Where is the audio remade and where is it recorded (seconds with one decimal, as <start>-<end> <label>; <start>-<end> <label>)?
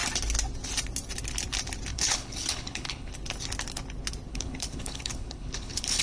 0.0-1.9 recorded; 1.9-3.1 remade; 3.1-4.3 recorded; 4.3-6.0 remade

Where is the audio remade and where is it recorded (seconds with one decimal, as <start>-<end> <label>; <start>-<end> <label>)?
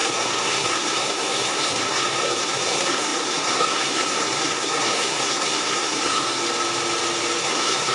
0.0-6.4 remade; 6.4-7.4 recorded; 7.4-7.9 remade